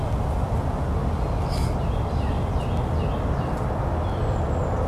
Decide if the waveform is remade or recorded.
recorded